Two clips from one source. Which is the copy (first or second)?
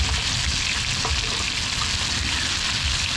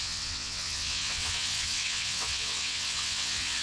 second